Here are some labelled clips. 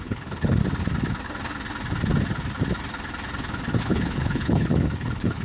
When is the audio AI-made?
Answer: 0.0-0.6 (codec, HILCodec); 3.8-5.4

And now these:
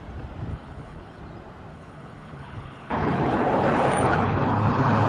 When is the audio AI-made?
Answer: 0.5-1.2 (codec, HILCodec); 1.7-5.1